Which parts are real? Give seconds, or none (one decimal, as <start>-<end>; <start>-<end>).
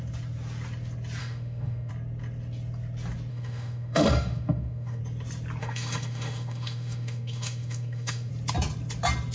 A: 0.0-1.2; 1.9-3.3; 5.0-5.6; 8.3-9.3